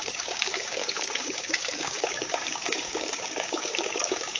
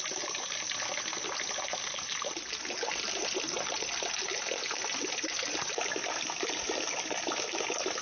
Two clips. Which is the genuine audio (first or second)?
second